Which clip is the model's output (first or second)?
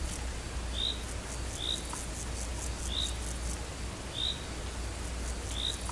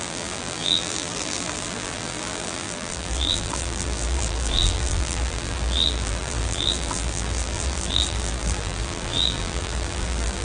second